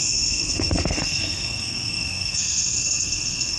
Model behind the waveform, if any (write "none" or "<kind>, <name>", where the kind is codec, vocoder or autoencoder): codec, SNAC